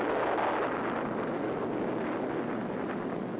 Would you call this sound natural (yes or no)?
yes